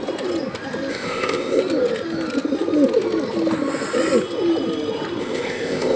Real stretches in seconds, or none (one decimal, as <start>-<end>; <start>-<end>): 0.0-0.9; 1.6-5.2